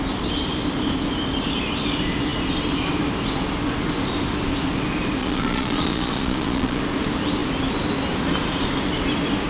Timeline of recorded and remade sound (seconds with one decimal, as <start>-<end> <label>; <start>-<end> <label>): 0.0-5.2 recorded; 5.2-6.8 remade; 6.8-9.5 recorded